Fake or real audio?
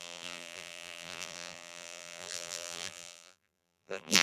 fake